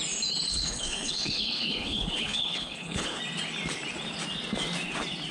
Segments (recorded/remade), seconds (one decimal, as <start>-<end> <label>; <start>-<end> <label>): 0.0-0.5 recorded; 0.5-3.2 remade; 3.2-5.3 recorded